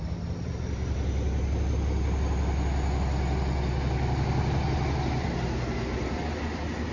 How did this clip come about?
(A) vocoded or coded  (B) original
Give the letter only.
B